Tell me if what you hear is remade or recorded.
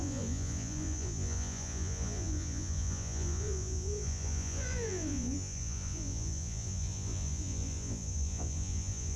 remade